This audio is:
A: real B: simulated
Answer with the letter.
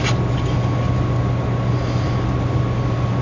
A